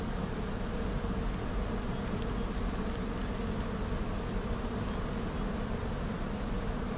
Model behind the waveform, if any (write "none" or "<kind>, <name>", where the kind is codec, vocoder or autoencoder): none